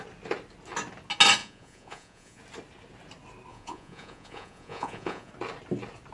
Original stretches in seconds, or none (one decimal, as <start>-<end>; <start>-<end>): 0.0-1.4; 2.4-3.5; 5.3-6.1